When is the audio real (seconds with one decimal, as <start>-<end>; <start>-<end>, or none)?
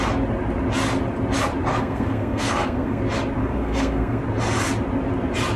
0.0-1.7; 3.0-3.4; 4.2-5.6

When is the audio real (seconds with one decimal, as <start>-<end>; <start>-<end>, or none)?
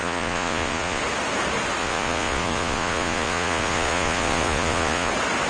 1.0-1.8; 5.1-5.5